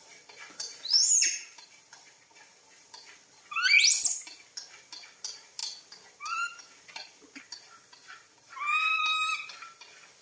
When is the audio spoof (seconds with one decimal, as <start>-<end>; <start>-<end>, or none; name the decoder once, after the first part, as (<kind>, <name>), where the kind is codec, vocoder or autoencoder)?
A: none